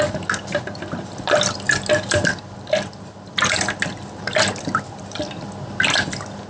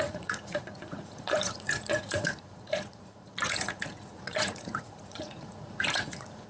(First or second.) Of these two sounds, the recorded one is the first